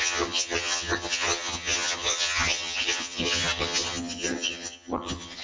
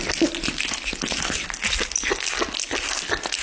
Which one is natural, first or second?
second